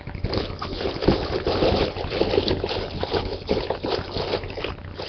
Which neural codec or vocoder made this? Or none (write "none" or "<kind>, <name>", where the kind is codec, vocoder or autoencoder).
none